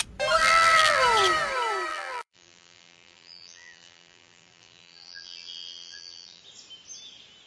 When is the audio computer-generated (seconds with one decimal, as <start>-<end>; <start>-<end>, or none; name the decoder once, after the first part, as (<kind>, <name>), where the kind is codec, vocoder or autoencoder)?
0.4-1.0 (vocoder, BigVGAN v2); 1.9-6.4